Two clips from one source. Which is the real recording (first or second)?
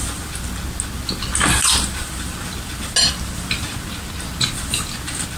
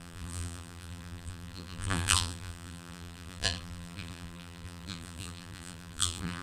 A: first